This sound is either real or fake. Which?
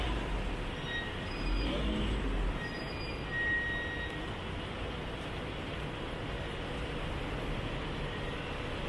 real